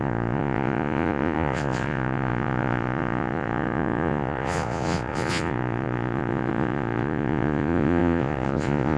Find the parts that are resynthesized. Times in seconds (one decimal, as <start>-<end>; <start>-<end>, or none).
0.0-9.0